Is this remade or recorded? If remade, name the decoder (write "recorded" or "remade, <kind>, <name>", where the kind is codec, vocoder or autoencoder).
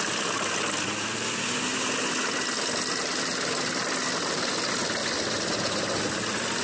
recorded